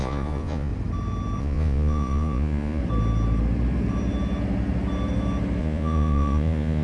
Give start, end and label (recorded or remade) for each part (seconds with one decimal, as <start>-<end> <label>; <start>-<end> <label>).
0.0-0.7 remade; 0.7-1.4 recorded; 1.4-2.8 remade; 2.8-5.6 recorded; 5.6-6.8 remade